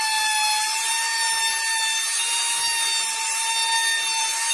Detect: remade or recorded recorded